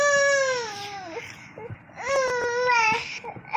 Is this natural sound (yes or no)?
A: yes